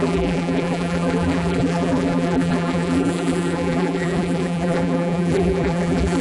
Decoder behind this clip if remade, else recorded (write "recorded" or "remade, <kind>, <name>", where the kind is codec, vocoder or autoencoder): remade, vocoder, BigVGAN v2